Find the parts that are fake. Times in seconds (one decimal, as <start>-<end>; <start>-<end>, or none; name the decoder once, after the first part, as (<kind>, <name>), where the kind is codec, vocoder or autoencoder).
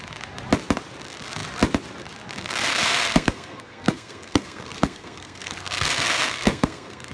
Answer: 2.7-7.1 (codec, SNAC)